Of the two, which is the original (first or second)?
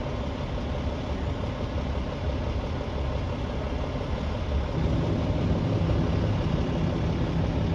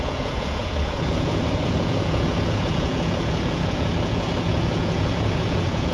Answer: first